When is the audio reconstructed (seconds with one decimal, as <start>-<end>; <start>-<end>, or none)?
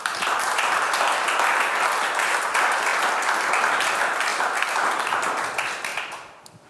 none